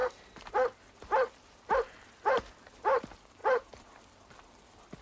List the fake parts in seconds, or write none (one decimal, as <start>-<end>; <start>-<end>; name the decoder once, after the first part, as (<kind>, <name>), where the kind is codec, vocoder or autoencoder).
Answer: 0.0-3.0 (vocoder, BigVGAN v2); 3.4-4.0